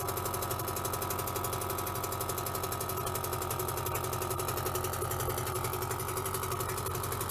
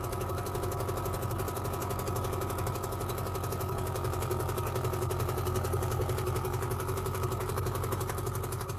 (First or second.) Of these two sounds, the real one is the first